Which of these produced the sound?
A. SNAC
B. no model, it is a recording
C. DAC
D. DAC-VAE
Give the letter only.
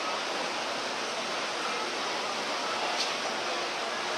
B